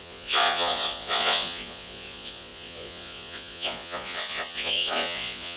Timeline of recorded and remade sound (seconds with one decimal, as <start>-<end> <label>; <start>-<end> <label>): 0.0-5.6 remade